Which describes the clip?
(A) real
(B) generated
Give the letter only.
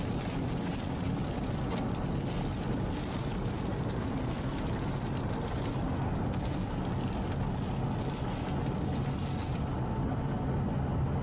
A